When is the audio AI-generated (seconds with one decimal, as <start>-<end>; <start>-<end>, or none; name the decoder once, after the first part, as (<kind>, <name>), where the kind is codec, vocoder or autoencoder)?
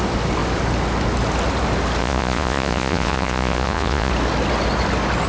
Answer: 2.0-4.1 (vocoder, Vocos)